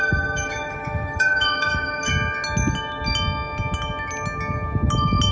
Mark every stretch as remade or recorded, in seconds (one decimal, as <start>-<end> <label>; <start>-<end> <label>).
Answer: 0.0-2.1 remade; 2.1-5.3 recorded